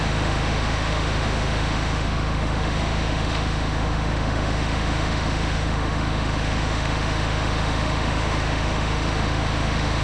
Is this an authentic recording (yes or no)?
no